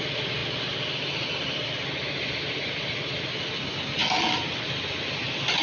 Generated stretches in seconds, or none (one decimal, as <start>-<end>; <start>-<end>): none